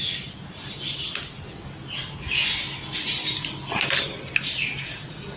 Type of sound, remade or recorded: recorded